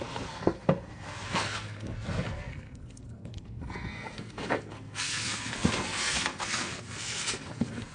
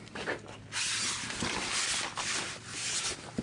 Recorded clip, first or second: second